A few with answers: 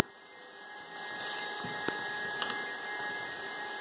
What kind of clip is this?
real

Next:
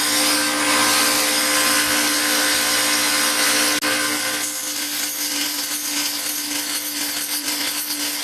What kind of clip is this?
real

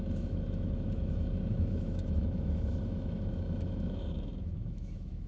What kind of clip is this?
fake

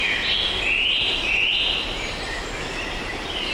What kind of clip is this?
real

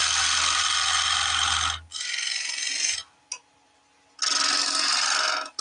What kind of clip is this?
real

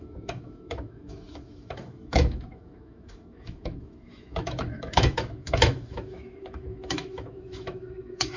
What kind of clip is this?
fake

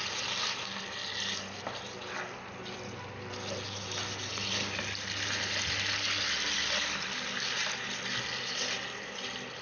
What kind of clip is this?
real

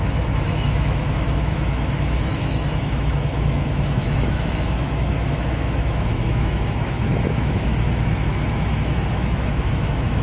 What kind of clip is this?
fake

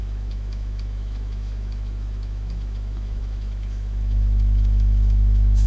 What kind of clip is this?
fake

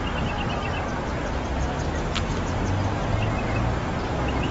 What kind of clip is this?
real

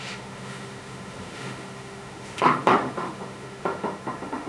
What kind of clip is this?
fake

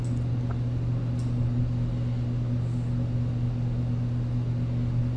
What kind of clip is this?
real